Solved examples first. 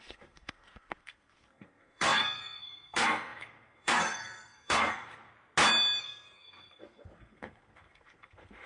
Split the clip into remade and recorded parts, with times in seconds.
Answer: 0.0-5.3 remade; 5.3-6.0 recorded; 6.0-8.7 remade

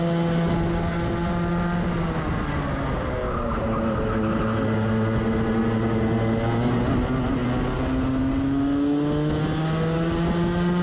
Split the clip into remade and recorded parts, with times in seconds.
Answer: 0.0-10.8 recorded

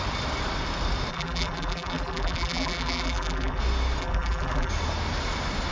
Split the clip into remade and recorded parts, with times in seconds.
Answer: 0.0-1.1 recorded; 1.1-3.6 remade; 3.6-4.0 recorded; 4.0-4.7 remade; 4.7-5.7 recorded

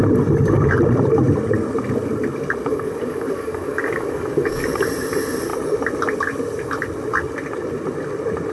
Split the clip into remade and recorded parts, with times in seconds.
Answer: 0.0-2.7 recorded; 2.7-4.8 remade; 4.8-8.5 recorded

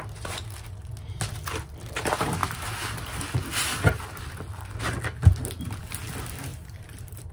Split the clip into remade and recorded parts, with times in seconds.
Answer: 0.0-6.5 recorded; 6.5-7.3 remade

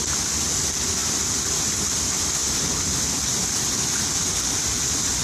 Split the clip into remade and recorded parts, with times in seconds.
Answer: 0.0-5.2 recorded